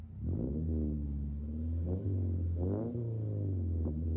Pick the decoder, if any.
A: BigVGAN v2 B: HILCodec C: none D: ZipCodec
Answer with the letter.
C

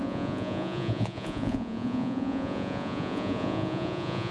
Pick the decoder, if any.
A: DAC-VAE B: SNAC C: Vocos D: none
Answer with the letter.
C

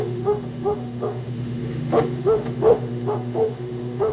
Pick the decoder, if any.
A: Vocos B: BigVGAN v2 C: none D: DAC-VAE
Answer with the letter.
D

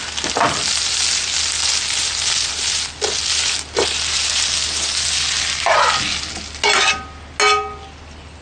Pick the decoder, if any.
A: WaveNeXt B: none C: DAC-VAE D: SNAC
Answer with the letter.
B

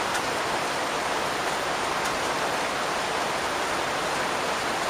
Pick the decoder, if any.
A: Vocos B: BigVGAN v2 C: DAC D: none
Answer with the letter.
B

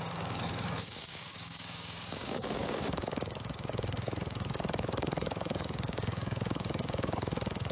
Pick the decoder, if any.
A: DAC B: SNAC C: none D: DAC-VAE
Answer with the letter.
A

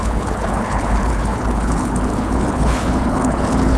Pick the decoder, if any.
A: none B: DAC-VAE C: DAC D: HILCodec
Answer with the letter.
D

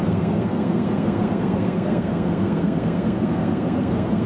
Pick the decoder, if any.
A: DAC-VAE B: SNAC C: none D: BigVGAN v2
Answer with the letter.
B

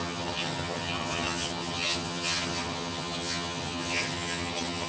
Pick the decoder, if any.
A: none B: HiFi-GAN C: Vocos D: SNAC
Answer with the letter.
B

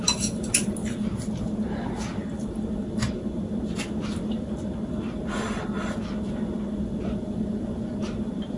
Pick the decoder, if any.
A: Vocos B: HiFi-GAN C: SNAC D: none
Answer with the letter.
D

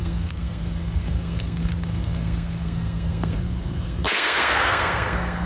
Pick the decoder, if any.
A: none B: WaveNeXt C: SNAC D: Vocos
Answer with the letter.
C